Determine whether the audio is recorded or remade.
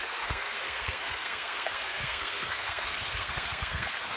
remade